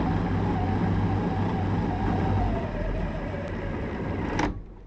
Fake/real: real